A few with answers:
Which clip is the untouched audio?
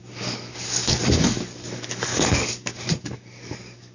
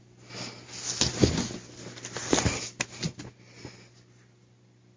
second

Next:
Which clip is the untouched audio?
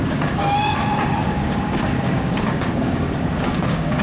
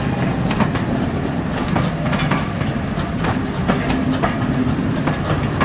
second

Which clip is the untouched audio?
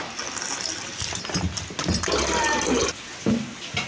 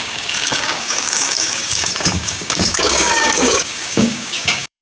first